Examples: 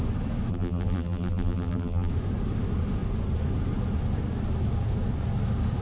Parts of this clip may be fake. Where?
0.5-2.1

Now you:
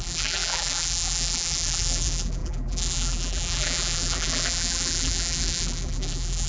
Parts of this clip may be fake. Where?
0.0-6.5

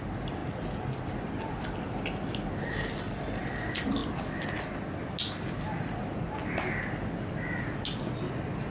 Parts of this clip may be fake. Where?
none

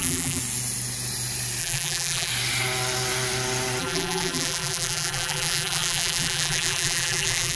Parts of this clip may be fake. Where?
0.0-0.4; 1.6-2.3; 3.8-7.6

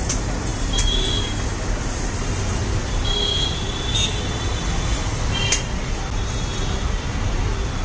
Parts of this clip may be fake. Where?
0.5-1.1

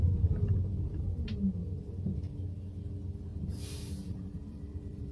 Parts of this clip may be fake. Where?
3.3-5.1

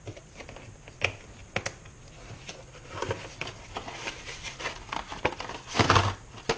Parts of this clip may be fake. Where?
3.7-4.6

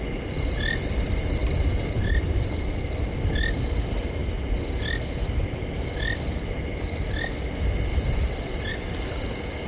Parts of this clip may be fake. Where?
1.4-3.2; 7.9-8.7